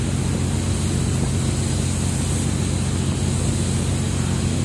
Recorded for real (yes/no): yes